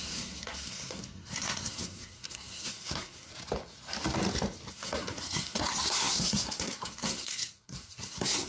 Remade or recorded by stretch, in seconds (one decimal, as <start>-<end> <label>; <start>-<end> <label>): 0.0-3.3 remade; 3.3-4.7 recorded; 4.7-8.5 remade